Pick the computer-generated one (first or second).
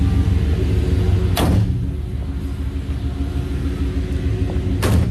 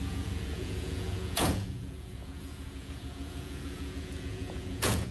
second